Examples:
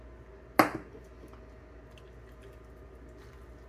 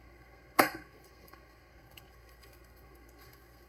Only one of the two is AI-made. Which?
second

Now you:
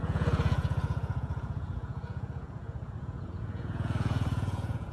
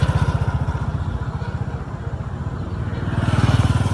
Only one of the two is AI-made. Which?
first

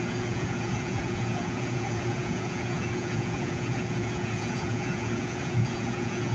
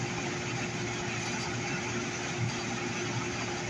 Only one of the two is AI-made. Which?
first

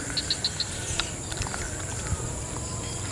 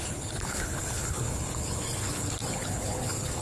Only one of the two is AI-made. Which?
second